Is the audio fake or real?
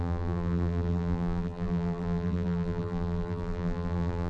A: fake